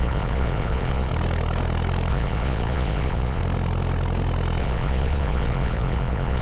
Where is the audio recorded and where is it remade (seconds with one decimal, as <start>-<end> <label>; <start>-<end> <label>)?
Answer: 0.0-1.1 remade; 1.1-2.1 recorded; 2.1-3.4 remade; 3.4-4.6 recorded; 4.6-6.4 remade